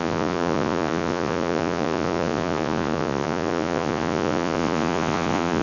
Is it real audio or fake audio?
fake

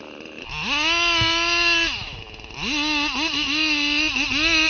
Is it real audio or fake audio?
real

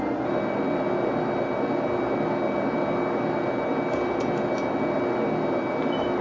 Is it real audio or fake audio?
real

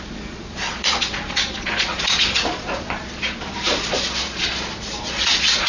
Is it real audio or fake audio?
fake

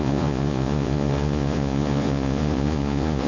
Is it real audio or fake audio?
fake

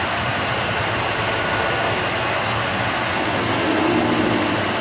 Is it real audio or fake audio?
real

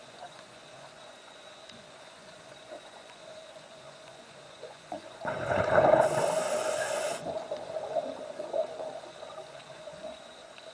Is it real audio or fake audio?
fake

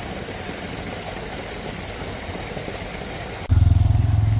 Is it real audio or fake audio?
real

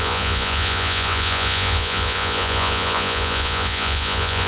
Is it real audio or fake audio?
fake